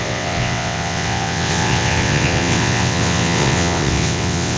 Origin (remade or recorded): remade